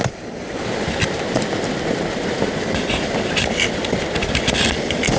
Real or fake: real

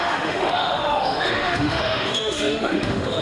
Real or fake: fake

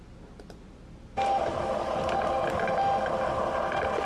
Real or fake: real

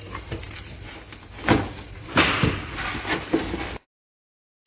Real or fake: real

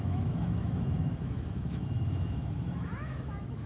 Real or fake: fake